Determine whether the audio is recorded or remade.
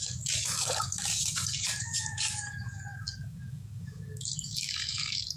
remade